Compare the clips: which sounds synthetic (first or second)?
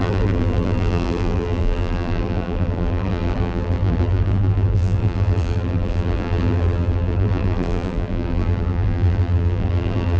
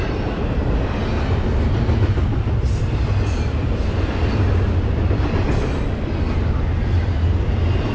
first